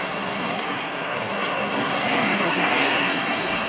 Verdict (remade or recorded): remade